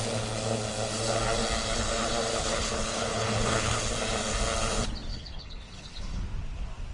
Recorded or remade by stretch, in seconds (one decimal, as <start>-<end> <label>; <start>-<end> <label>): 0.0-2.3 recorded; 2.3-3.9 remade; 3.9-5.1 recorded; 5.1-6.2 remade; 6.2-6.9 recorded